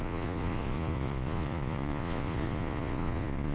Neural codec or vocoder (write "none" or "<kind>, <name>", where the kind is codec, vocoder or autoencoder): vocoder, Vocos